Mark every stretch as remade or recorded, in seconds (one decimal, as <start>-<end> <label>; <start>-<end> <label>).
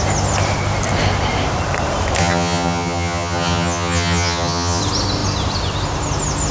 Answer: 0.0-2.2 recorded; 2.2-4.8 remade; 4.8-6.5 recorded